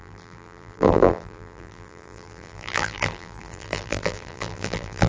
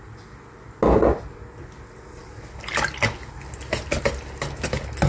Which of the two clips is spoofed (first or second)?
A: first